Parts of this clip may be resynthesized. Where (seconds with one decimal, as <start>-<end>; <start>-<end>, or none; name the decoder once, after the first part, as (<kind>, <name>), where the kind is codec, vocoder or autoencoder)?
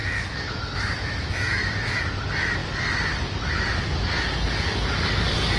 0.0-2.0 (autoencoder, DAC-VAE)